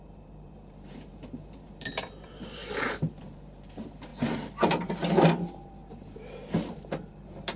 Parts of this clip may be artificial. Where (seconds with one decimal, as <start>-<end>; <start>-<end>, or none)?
0.0-4.1; 5.1-7.6